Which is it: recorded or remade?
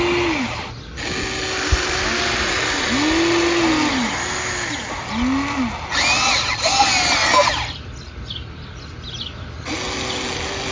recorded